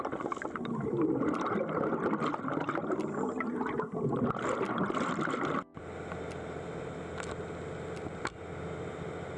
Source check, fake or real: real